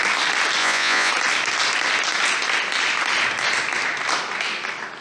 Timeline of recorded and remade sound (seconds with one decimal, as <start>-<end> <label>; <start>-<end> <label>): 0.0-0.6 recorded; 0.6-1.1 remade; 1.1-5.0 recorded

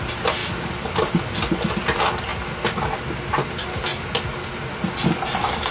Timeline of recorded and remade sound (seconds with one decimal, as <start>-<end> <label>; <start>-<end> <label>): 0.0-5.7 recorded

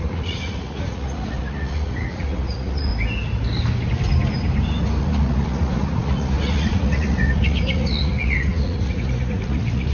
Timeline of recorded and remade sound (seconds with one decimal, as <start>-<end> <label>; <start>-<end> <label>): 0.0-2.9 remade; 2.9-5.0 recorded; 5.0-9.9 remade

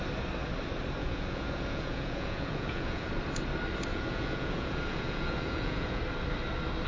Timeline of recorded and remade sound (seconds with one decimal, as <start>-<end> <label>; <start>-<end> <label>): 0.0-1.0 recorded; 1.0-3.1 remade; 3.1-3.9 recorded; 3.9-6.0 remade; 6.0-6.9 recorded